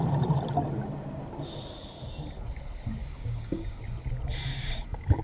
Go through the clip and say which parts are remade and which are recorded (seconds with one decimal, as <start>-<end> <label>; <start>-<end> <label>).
0.0-3.0 recorded; 3.0-3.8 remade; 3.8-4.5 recorded; 4.5-5.2 remade